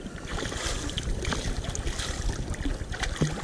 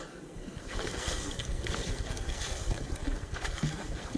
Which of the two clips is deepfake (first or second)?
second